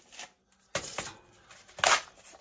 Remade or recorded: recorded